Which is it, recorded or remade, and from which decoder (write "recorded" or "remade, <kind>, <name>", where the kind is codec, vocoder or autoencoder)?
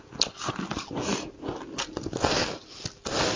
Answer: recorded